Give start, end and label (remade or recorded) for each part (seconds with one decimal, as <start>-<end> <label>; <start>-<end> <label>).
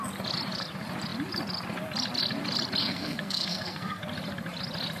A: 0.0-2.8 recorded; 2.8-4.0 remade; 4.0-5.0 recorded